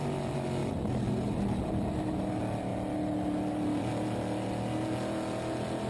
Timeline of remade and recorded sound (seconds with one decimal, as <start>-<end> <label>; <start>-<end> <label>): 0.0-5.9 recorded